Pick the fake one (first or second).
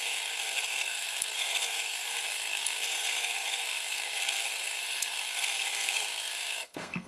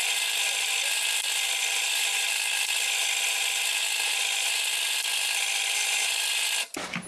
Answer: first